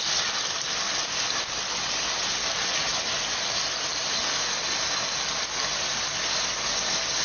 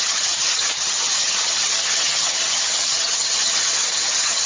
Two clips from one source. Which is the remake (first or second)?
second